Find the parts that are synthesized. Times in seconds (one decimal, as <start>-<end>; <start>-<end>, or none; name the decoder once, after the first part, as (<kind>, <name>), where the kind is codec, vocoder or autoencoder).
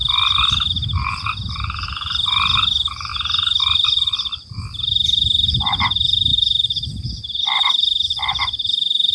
3.1-3.6 (vocoder, BigVGAN v2); 6.3-7.6